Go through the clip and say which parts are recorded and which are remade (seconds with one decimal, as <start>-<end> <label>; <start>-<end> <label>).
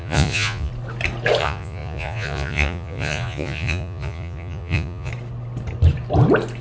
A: 0.0-0.7 remade; 0.7-1.4 recorded; 1.4-5.1 remade; 5.1-6.6 recorded